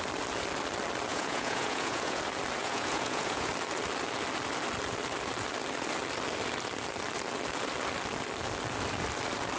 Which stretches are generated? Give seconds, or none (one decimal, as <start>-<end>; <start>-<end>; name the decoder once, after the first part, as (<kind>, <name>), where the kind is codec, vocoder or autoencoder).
1.1-2.2 (vocoder, Vocos); 2.6-3.5